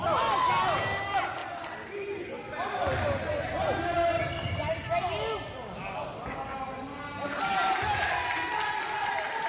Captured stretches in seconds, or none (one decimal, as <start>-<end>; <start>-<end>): 0.0-9.5